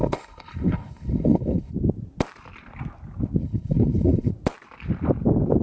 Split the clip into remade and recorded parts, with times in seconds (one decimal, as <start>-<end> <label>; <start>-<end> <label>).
0.0-1.7 remade; 1.7-3.4 recorded; 3.4-4.3 remade; 4.3-5.6 recorded